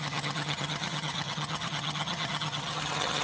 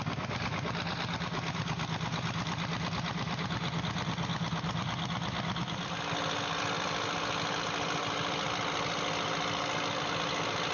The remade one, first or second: first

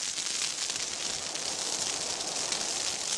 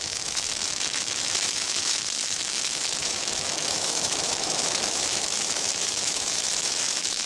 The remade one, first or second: second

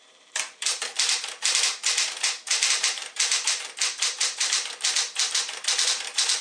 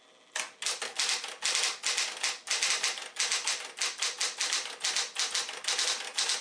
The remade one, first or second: first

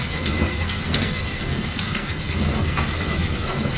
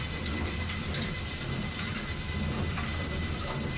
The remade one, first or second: first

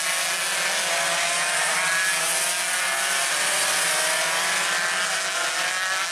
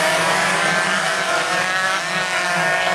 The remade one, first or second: second